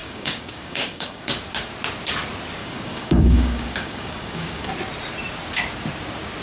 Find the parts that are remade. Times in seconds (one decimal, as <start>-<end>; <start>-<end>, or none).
0.0-1.4; 2.6-4.7